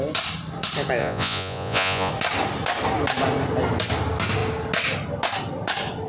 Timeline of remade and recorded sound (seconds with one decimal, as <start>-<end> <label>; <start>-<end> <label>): 0.0-1.0 recorded; 1.0-2.1 remade; 2.1-6.1 recorded